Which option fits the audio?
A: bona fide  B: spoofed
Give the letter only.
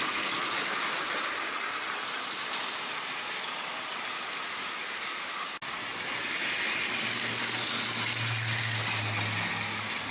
A